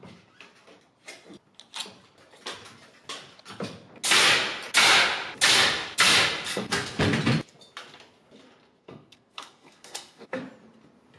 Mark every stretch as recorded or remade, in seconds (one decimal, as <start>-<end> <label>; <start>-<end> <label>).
0.0-6.5 recorded; 6.5-7.0 remade; 7.0-8.8 recorded; 8.8-10.4 remade; 10.4-11.2 recorded